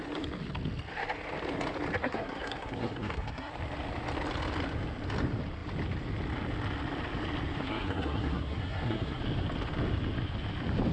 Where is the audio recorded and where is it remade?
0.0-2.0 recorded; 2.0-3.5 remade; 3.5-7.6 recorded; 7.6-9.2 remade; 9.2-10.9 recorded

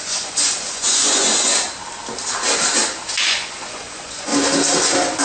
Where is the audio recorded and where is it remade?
0.0-1.5 remade; 1.5-3.1 recorded; 3.1-4.3 remade; 4.3-5.2 recorded

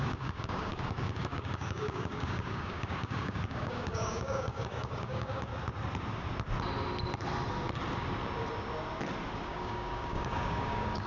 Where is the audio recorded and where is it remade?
0.0-5.5 remade; 5.5-9.5 recorded; 9.5-11.1 remade

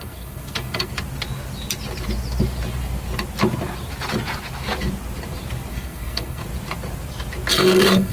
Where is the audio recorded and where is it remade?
0.0-0.9 remade; 0.9-5.7 recorded; 5.7-6.4 remade; 6.4-7.5 recorded; 7.5-8.1 remade

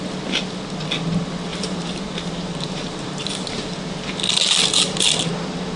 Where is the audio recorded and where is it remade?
0.0-1.5 recorded; 1.5-3.8 remade; 3.8-5.8 recorded